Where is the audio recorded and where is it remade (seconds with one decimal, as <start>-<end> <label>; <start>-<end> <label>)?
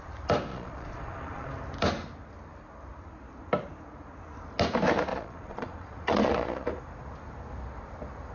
0.0-0.5 recorded; 0.5-1.5 remade; 1.5-5.1 recorded; 5.1-6.7 remade; 6.7-8.3 recorded